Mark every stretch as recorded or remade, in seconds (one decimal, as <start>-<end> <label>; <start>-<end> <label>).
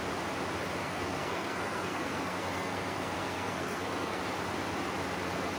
0.0-0.8 recorded; 0.8-4.2 remade; 4.2-5.6 recorded